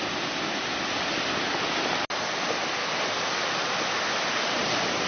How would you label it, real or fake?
real